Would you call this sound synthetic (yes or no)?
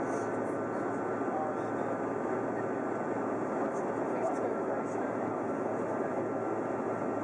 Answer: no